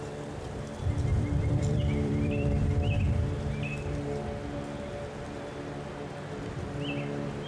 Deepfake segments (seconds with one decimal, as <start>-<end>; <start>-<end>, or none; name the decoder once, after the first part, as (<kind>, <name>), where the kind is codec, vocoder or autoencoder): 1.1-2.7 (vocoder, BigVGAN v2)